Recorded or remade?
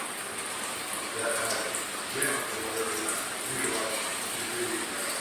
recorded